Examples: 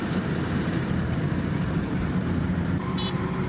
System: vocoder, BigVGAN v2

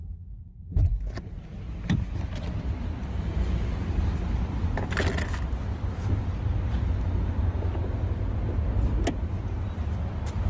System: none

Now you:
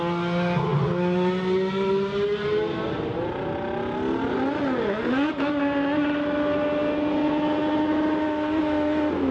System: none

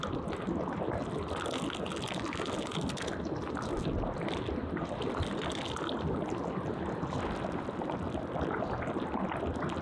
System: none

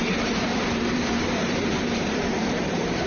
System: vocoder, BigVGAN v2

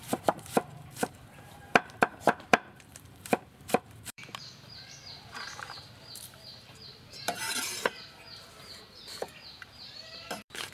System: vocoder, BigVGAN v2